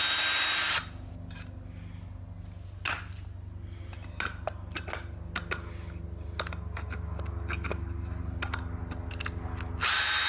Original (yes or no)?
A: yes